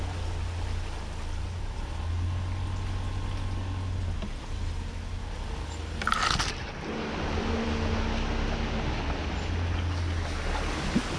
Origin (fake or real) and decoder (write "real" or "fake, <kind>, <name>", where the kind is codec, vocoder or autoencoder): real